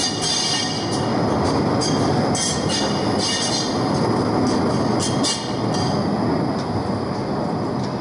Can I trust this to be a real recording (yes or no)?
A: yes